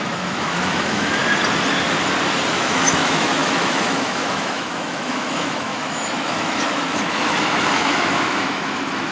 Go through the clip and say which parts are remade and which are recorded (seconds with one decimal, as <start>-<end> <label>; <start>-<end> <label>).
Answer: 0.0-1.2 remade; 1.2-2.5 recorded; 2.5-9.1 remade